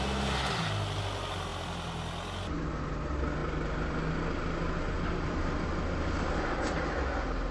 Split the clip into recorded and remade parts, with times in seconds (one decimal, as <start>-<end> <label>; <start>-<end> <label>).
0.0-7.5 recorded